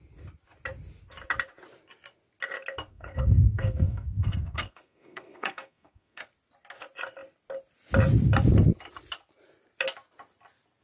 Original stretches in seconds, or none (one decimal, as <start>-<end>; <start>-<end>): 0.0-2.9; 6.2-10.8